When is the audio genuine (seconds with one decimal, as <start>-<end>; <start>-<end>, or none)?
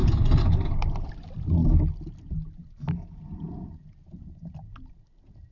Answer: 1.1-5.5